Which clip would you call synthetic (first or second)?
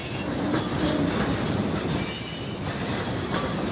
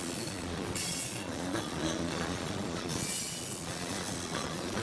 second